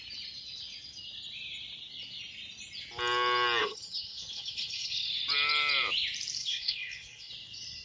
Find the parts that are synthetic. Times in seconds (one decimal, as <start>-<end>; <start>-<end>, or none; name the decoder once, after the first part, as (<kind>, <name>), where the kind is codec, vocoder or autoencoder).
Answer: 3.6-5.1 (codec, HILCodec); 6.4-7.3